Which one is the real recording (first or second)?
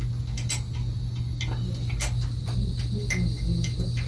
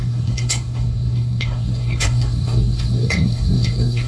first